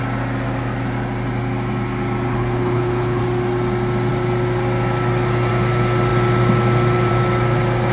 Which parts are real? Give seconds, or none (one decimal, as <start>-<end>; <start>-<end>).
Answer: 0.0-2.3; 3.2-7.9